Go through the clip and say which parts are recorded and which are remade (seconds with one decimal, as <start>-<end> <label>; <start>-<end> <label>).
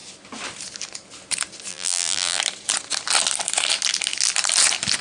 0.0-1.7 recorded; 1.7-2.4 remade; 2.4-5.0 recorded